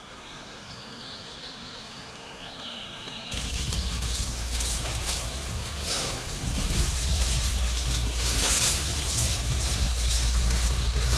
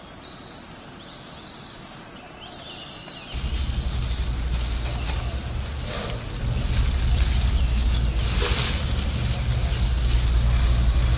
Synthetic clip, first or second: first